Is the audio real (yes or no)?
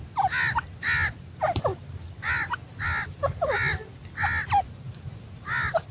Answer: yes